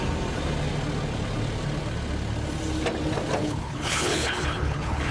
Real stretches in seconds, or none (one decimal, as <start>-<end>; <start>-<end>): 0.0-3.4